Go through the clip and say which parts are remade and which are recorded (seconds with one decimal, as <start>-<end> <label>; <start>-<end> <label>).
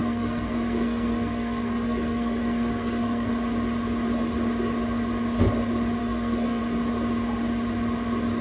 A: 0.0-3.3 remade; 3.3-6.0 recorded; 6.0-6.6 remade; 6.6-8.4 recorded